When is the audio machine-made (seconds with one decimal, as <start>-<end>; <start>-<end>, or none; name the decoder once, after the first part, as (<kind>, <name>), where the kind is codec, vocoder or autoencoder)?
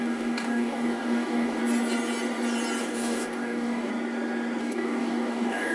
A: 0.0-1.6 (codec, DAC); 2.8-3.9; 4.6-5.7